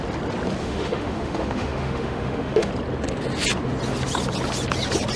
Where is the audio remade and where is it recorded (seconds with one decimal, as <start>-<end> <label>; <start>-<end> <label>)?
0.0-0.6 recorded; 0.6-2.7 remade; 2.7-5.2 recorded